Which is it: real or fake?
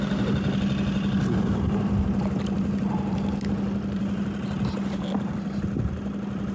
real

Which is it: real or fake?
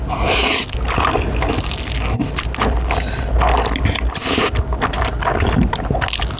real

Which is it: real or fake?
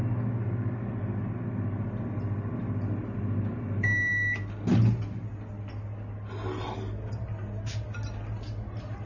real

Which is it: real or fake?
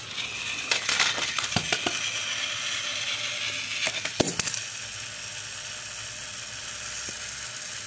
real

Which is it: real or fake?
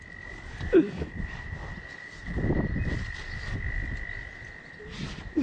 fake